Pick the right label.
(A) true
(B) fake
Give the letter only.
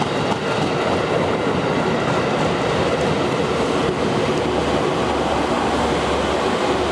A